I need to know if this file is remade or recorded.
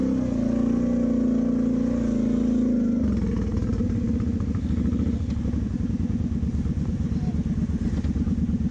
recorded